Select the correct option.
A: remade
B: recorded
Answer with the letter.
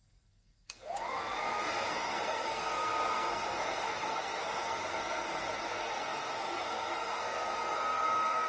A